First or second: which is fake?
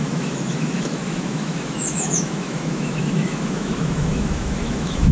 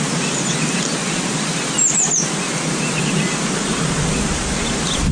first